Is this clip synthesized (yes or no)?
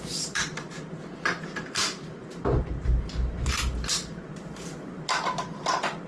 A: yes